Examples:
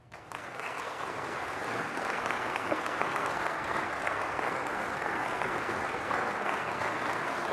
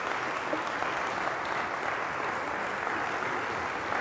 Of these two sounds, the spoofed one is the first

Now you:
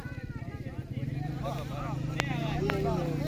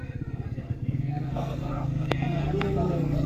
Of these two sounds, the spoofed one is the second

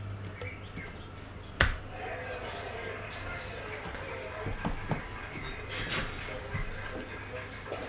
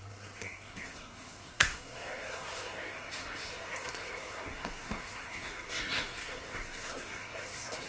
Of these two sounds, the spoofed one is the second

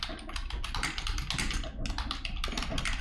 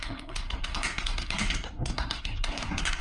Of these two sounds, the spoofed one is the second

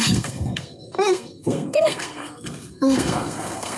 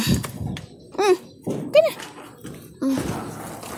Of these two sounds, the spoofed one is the first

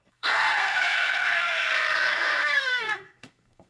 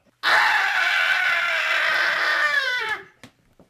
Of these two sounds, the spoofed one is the first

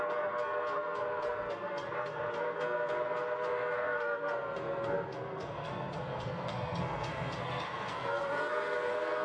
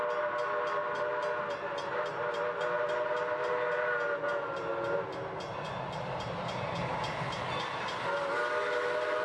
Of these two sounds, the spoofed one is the first